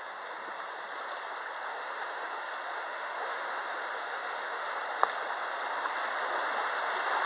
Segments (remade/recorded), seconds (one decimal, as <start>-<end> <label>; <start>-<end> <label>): 0.0-1.7 recorded; 1.7-4.7 remade; 4.7-7.3 recorded